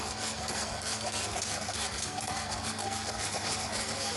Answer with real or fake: fake